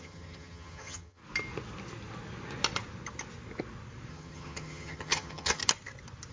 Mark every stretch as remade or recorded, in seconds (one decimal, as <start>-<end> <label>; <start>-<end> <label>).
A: 0.0-1.2 remade; 1.2-4.1 recorded; 4.1-5.6 remade; 5.6-6.3 recorded